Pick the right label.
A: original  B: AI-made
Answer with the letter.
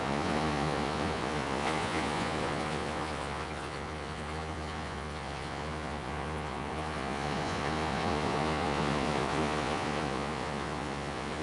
B